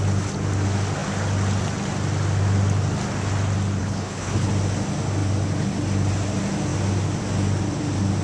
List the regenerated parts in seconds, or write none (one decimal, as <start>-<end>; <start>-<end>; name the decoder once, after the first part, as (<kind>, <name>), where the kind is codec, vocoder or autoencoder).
3.8-4.5 (codec, HILCodec)